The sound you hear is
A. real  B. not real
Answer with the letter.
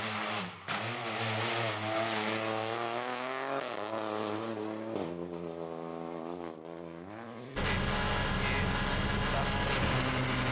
A